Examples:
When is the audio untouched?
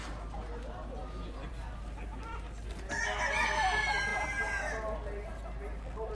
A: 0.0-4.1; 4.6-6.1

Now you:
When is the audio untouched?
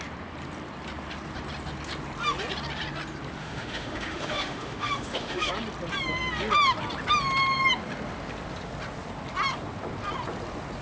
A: 0.0-3.4; 5.5-10.8